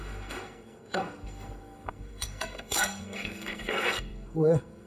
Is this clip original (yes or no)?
no